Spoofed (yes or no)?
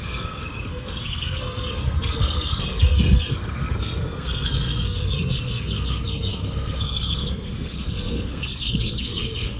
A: yes